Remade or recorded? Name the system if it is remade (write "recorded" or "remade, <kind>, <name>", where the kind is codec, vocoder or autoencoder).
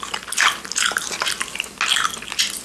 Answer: recorded